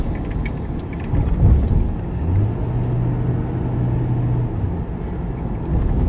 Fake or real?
real